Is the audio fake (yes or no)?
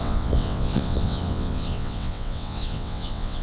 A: yes